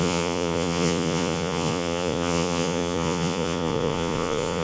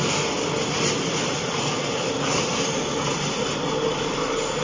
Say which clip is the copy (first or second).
first